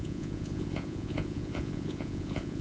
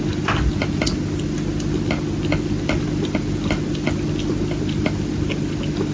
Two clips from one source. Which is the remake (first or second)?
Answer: first